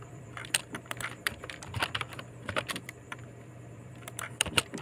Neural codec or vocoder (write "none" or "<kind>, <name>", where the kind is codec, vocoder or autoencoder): vocoder, BigVGAN v2